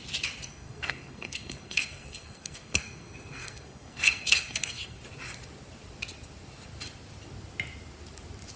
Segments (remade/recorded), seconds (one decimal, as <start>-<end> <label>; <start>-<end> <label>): 0.0-0.5 recorded; 0.5-5.0 remade; 5.0-8.6 recorded

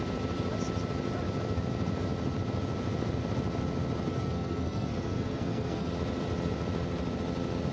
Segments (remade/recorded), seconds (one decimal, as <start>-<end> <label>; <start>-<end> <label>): 0.0-4.1 recorded; 4.1-5.9 remade; 5.9-7.7 recorded

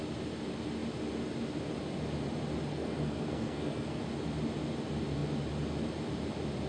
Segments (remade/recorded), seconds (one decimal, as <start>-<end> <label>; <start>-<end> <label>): 0.0-2.7 recorded; 2.7-4.0 remade; 4.0-6.7 recorded

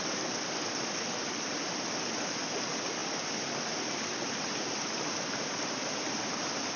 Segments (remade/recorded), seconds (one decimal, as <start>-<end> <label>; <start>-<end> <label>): 0.0-6.8 recorded

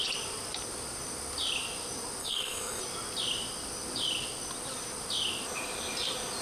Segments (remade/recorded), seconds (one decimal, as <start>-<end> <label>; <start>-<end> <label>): 0.0-2.2 recorded; 2.2-2.8 remade; 2.8-6.4 recorded

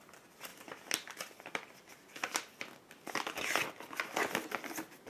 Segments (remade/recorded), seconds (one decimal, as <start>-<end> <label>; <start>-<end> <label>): 0.0-5.1 recorded

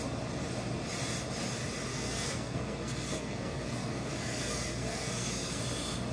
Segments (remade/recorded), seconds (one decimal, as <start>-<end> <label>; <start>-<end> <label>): 0.0-1.9 recorded; 1.9-5.6 remade; 5.6-6.1 recorded